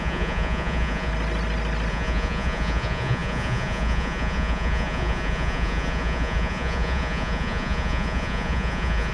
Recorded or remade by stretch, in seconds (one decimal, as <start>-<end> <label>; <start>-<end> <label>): 0.0-1.1 remade; 1.1-1.9 recorded; 1.9-9.1 remade